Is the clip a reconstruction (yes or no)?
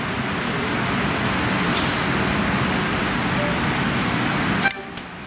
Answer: no